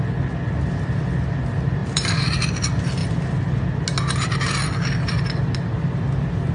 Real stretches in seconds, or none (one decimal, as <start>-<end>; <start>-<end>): 0.0-1.8; 2.5-3.0; 3.7-6.5